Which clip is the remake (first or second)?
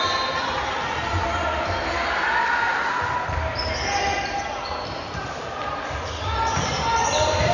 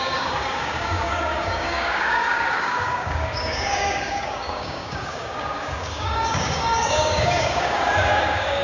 second